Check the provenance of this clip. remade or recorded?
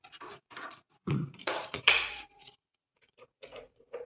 remade